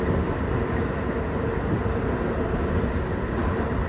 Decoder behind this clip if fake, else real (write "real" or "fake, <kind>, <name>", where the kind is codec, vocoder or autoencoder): real